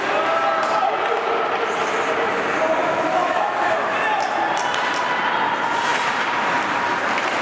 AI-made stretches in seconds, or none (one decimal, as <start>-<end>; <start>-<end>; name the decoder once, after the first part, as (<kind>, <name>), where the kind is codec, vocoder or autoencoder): 2.8-3.5 (autoencoder, DAC-VAE)